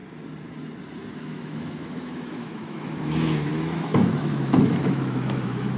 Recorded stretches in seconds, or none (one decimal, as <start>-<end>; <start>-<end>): 0.0-1.1